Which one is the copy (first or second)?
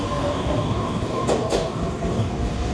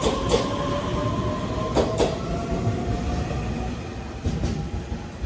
first